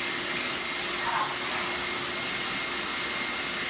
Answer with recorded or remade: recorded